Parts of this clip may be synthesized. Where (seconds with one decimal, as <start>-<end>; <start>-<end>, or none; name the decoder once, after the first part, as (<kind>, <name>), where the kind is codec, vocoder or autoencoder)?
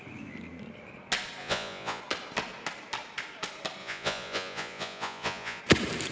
1.4-2.0 (vocoder, Vocos); 3.8-5.6